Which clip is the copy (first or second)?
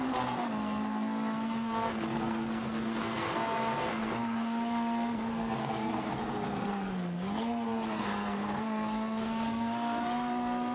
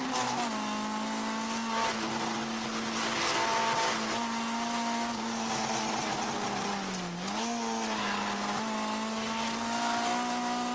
first